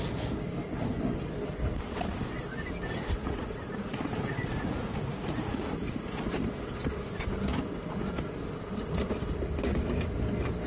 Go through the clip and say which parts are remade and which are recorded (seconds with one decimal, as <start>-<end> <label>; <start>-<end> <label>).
0.0-3.2 recorded; 3.2-6.1 remade; 6.1-10.7 recorded